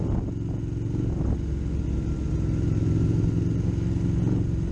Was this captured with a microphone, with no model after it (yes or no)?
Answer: yes